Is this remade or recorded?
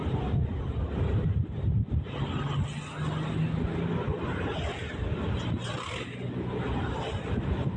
recorded